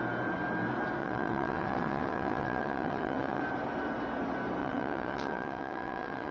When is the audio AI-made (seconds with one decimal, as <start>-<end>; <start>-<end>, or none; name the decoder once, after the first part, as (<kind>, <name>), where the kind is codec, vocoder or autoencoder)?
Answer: 1.0-3.4 (vocoder, WaveNeXt); 4.6-6.3